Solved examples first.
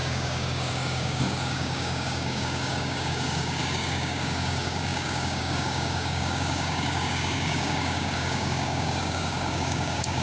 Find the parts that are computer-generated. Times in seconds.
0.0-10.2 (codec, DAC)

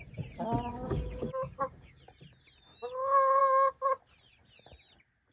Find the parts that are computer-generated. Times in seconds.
0.7-2.0 (codec, DAC); 3.4-4.0

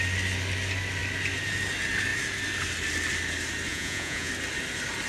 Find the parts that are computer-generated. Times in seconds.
3.7-4.3 (vocoder, Vocos)